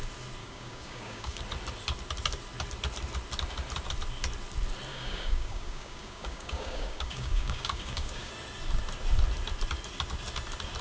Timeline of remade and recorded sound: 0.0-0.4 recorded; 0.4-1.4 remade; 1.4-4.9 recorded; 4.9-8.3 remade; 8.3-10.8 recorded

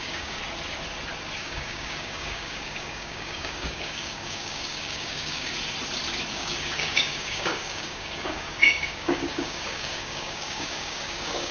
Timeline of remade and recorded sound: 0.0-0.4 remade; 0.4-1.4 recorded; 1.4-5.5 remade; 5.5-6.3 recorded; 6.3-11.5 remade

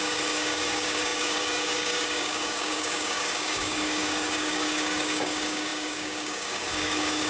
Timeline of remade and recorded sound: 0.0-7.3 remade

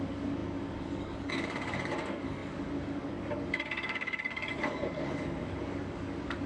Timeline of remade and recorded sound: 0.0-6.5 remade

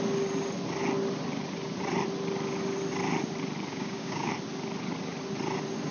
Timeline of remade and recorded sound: 0.0-3.7 recorded; 3.7-4.3 remade; 4.3-5.9 recorded

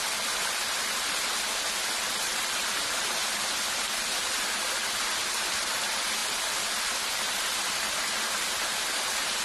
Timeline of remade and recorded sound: 0.0-9.4 recorded

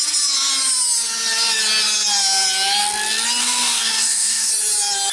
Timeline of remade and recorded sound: 0.0-3.4 recorded; 3.4-4.5 remade; 4.5-5.1 recorded